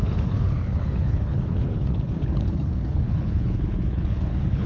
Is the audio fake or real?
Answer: fake